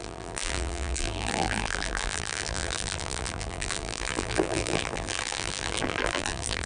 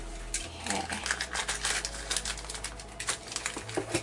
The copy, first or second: first